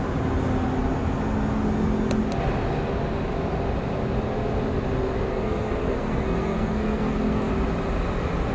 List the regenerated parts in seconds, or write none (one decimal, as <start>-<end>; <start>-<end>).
5.3-7.5